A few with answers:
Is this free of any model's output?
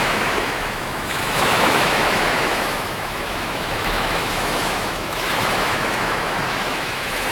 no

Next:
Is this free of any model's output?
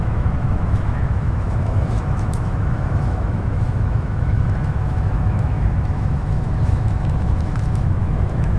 no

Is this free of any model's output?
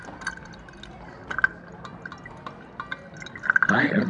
yes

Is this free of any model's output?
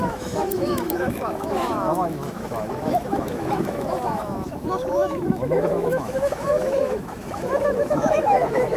no